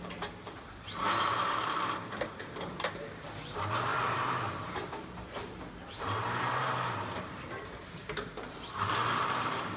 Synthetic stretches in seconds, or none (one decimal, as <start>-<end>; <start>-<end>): 0.0-3.9; 6.0-9.8